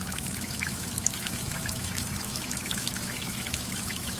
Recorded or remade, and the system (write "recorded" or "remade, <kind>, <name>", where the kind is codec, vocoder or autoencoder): remade, autoencoder, DAC-VAE